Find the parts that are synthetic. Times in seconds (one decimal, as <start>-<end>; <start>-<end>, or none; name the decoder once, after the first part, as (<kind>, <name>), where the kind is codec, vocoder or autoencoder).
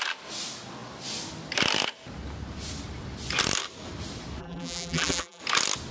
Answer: 4.4-5.4 (vocoder, BigVGAN v2)